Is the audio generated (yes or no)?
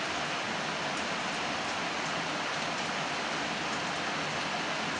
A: no